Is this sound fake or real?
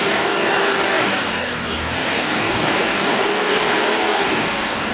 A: fake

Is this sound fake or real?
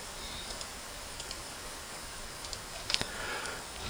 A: fake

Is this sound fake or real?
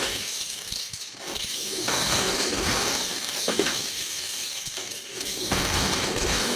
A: fake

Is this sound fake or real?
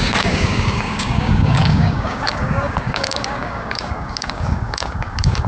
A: fake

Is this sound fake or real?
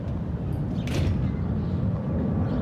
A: real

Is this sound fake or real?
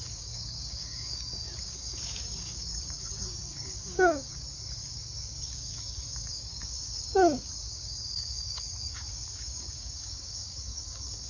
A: fake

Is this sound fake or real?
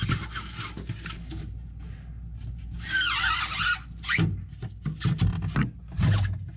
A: real